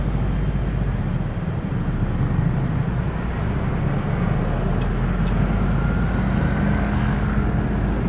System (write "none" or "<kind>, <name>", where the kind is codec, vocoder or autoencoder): none